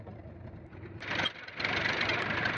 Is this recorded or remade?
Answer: recorded